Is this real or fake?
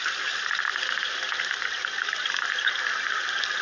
real